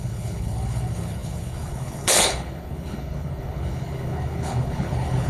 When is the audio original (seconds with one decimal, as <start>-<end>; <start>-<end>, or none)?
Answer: none